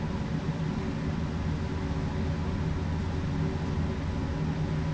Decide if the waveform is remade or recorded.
recorded